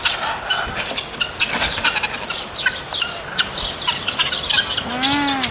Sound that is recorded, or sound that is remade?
recorded